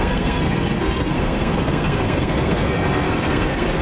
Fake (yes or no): yes